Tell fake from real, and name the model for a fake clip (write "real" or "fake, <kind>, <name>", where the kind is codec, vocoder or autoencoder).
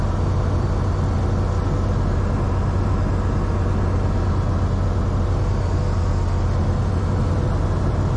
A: real